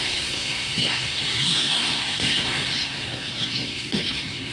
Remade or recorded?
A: remade